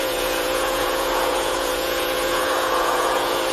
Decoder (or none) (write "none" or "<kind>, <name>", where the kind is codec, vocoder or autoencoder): vocoder, Vocos